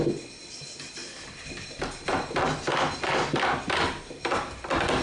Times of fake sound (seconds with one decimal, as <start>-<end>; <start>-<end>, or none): 1.0-4.0